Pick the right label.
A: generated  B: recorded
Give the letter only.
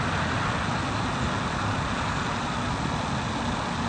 B